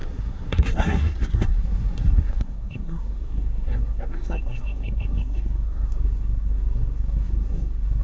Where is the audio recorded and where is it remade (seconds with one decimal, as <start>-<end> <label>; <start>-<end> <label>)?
0.0-8.0 remade